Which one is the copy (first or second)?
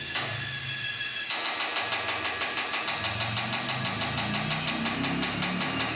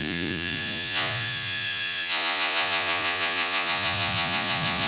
second